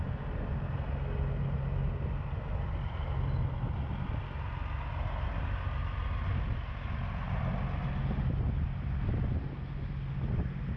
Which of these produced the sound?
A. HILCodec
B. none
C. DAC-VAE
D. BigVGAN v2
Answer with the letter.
B